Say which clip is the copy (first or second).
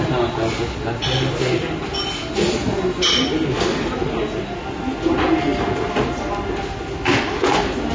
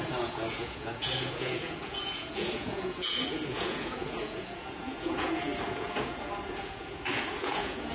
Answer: second